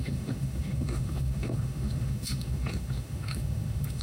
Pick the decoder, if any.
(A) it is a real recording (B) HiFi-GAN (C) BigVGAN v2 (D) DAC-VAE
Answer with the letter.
D